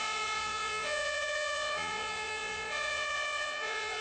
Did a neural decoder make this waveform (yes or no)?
yes